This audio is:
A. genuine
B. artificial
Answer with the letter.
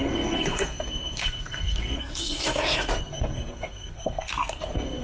B